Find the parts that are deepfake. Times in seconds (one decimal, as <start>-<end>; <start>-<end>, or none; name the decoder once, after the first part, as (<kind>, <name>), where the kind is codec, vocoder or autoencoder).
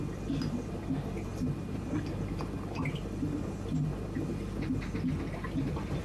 none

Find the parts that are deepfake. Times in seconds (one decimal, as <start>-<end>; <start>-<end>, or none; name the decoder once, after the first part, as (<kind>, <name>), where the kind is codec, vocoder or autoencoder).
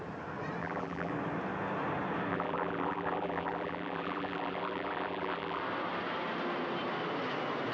0.6-1.1 (vocoder, BigVGAN v2); 2.3-5.6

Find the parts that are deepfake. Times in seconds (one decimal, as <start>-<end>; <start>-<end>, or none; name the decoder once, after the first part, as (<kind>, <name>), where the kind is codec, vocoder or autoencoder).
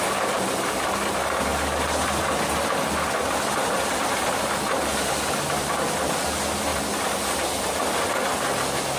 1.5-3.9 (vocoder, BigVGAN v2)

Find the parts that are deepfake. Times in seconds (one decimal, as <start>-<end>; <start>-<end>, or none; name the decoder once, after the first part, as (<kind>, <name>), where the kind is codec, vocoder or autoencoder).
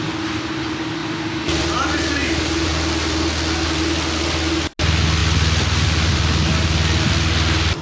2.2-2.7 (vocoder, BigVGAN v2)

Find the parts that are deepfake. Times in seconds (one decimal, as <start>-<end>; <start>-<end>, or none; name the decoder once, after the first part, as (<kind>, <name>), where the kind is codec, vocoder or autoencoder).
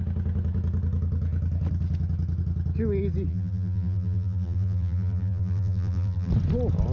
3.3-6.3 (vocoder, BigVGAN v2)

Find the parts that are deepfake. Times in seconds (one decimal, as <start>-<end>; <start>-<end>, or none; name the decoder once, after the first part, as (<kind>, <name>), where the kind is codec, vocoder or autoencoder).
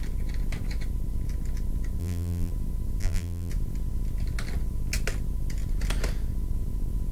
2.0-2.5 (vocoder, BigVGAN v2); 3.0-3.5